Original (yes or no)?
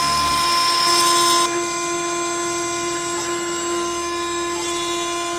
yes